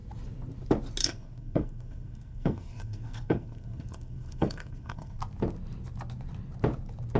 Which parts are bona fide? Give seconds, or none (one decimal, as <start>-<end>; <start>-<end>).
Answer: 0.0-1.0; 5.2-7.2